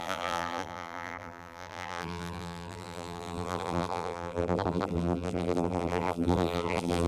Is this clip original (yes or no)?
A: no